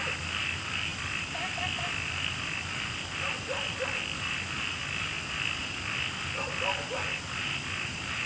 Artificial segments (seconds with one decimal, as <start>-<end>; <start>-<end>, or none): none